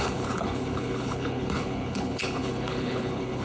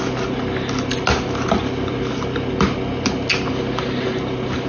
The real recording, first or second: second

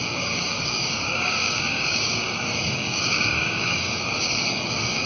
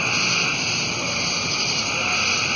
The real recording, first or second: second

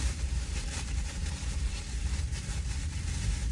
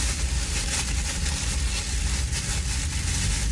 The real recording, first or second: second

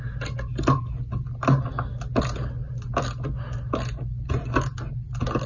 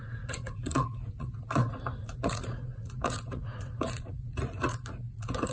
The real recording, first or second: first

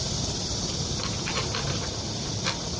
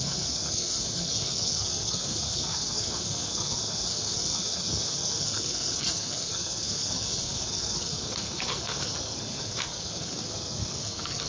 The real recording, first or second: first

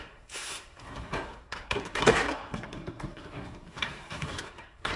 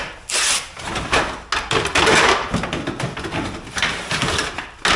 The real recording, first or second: second